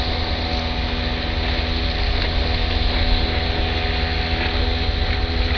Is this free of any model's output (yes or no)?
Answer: yes